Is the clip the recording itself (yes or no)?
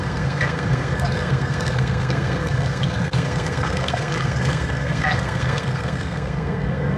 no